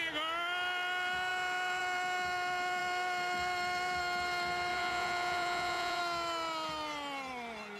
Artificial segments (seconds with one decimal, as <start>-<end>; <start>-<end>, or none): 4.7-6.0